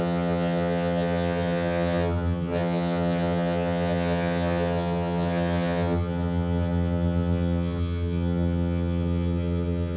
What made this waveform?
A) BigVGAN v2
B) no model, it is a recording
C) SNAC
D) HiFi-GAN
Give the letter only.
D